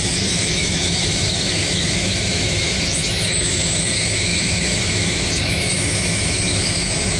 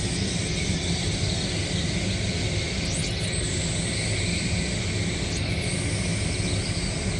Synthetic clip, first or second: first